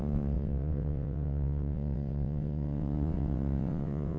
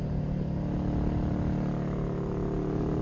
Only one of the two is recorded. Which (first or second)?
second